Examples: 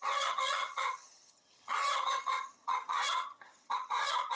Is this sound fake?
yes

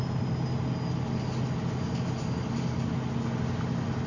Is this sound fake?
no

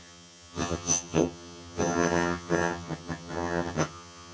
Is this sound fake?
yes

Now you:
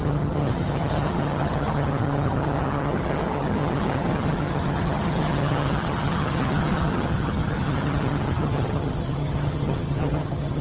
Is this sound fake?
yes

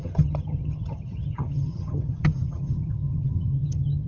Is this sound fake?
yes